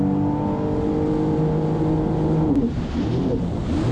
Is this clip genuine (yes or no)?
yes